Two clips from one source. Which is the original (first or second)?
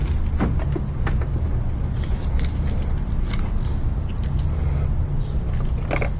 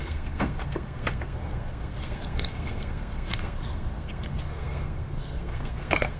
first